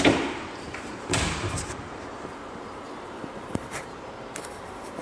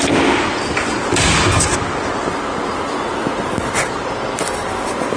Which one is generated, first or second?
first